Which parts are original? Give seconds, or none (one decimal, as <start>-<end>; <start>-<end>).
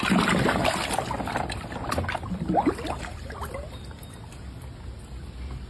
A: 0.0-5.7